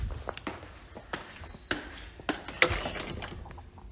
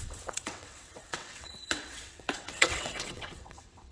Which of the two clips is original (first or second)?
first